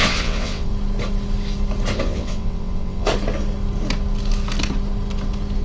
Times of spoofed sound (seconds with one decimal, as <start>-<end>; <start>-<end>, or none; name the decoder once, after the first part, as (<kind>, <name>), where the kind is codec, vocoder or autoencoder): 0.0-0.7 (vocoder, WaveNeXt); 2.0-3.1